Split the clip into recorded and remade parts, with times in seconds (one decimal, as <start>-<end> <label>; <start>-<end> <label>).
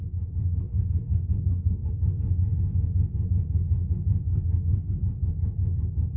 0.0-0.7 recorded; 0.7-1.9 remade; 1.9-4.3 recorded; 4.3-5.0 remade; 5.0-6.2 recorded